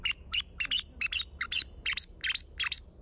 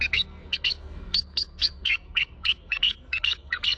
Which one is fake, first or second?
second